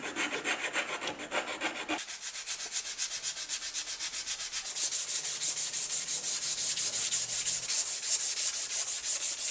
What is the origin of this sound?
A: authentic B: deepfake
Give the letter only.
A